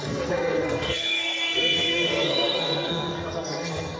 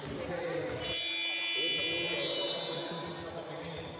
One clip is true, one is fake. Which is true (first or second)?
second